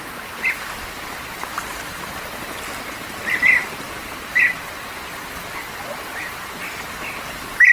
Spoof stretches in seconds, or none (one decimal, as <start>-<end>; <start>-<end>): 3.6-4.8

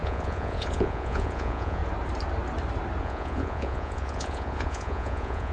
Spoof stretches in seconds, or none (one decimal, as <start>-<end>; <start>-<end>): 0.0-1.8; 3.0-5.5

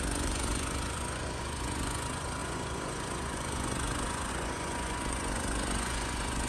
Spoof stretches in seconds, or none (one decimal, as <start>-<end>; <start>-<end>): 0.0-6.5

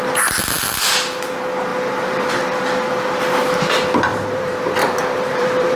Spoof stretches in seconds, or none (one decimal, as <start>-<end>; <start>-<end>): 1.7-2.6; 4.1-5.8

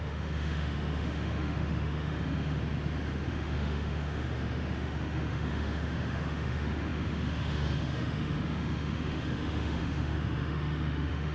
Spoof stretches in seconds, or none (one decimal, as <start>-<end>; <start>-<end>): 0.0-2.6; 3.3-11.3

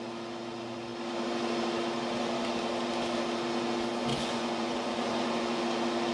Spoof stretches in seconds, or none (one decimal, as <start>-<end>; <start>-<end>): 4.1-5.6